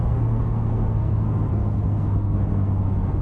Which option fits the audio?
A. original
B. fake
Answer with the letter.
B